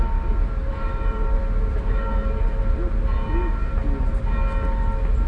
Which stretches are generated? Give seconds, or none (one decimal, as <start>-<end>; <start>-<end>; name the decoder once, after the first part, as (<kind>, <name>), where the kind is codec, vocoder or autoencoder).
0.6-2.6 (vocoder, BigVGAN v2)